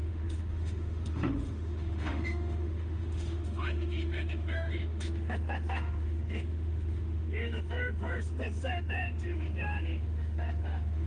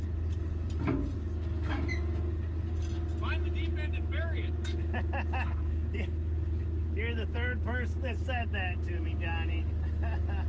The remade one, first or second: first